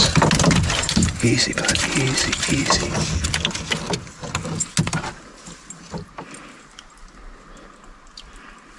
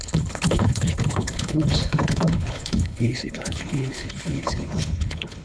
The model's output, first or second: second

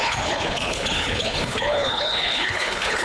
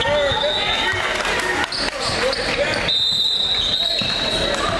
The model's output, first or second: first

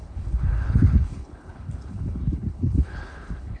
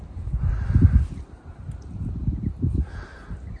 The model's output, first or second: first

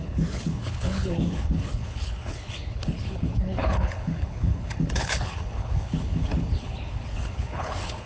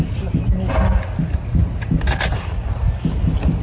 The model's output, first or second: first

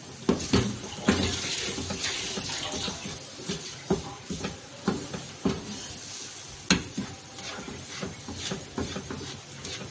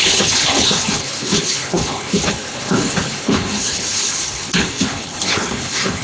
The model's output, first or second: second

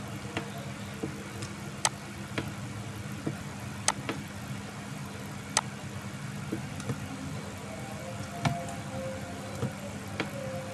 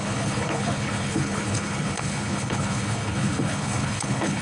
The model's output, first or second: second